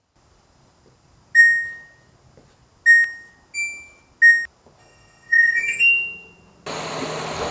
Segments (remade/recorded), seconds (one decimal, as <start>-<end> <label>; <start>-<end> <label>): 0.0-4.8 recorded; 4.8-5.8 remade; 5.8-7.5 recorded